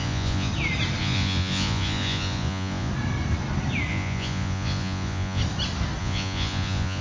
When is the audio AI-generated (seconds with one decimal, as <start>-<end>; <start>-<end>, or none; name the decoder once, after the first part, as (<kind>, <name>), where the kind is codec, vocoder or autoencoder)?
0.0-0.5 (vocoder, Vocos); 1.0-2.9; 3.9-5.4; 6.0-7.0

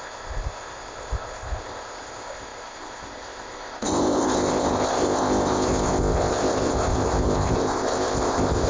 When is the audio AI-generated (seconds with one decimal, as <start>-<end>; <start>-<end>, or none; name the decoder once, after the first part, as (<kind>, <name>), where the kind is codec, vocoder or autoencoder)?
0.0-8.7 (codec, ZipCodec)

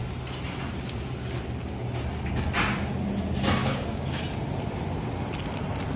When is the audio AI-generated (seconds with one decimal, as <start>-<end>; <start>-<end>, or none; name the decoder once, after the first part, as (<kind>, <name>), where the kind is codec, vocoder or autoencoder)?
3.6-4.2 (codec, DAC)

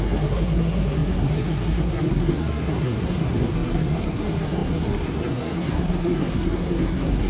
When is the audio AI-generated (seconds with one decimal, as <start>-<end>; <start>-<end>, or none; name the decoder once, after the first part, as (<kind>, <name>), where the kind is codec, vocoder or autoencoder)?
0.0-7.3 (codec, SNAC)

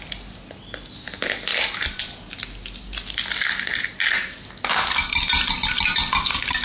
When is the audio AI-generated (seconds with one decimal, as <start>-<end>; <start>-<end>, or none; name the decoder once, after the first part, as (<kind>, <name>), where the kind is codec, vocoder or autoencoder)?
none

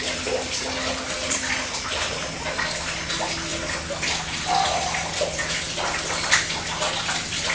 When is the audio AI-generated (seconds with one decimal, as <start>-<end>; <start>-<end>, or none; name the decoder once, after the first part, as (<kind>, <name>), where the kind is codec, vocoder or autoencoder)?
none

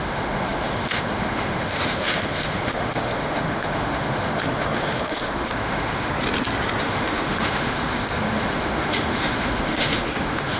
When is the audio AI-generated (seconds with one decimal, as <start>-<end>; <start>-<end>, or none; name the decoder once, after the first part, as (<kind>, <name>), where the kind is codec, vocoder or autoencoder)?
0.0-6.1 (autoencoder, DAC-VAE); 6.8-10.6